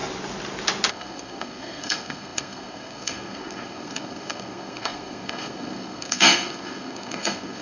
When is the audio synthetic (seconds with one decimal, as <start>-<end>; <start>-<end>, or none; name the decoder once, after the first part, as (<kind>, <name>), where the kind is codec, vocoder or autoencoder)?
0.9-7.6 (codec, SNAC)